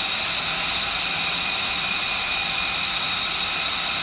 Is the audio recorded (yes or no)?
yes